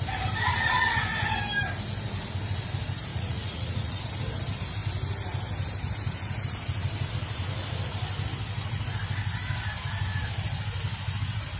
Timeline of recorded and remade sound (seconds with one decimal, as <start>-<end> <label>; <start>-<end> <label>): 0.0-0.5 recorded; 0.5-1.0 remade; 1.0-3.1 recorded; 3.1-4.0 remade; 4.0-11.6 recorded